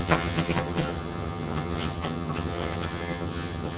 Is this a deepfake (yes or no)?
yes